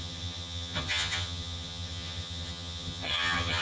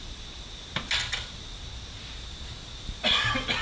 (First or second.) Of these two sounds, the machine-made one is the first